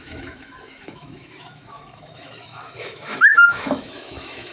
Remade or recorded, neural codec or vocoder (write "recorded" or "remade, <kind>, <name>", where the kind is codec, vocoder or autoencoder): remade, autoencoder, DAC-VAE